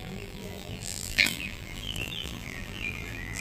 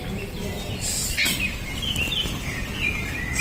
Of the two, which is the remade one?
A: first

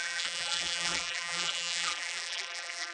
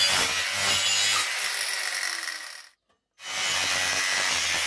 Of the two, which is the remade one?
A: first